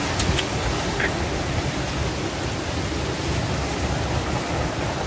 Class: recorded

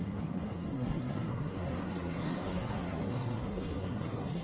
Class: remade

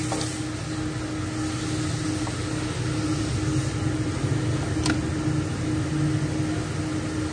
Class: recorded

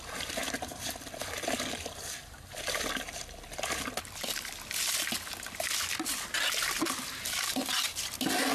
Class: recorded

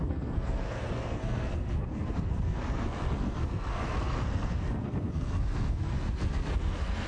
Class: remade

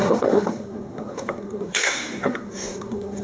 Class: remade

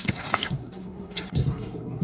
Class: remade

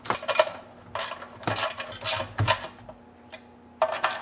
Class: recorded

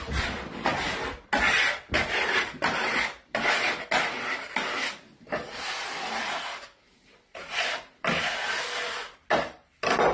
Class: recorded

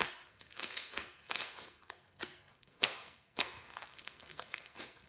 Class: remade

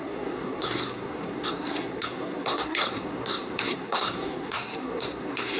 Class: remade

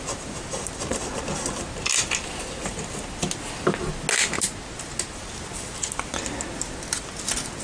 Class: recorded